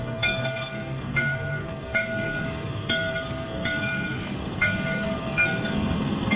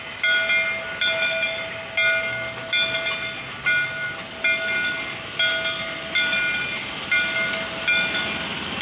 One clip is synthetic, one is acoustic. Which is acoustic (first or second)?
second